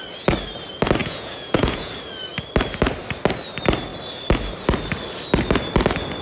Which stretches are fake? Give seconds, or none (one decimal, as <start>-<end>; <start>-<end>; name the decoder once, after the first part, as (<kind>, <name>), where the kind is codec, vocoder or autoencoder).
1.0-1.9 (vocoder, Vocos)